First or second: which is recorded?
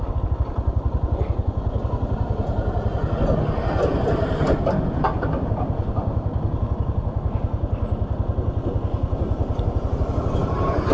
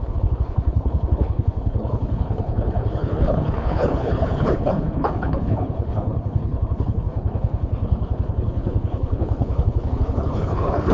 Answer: first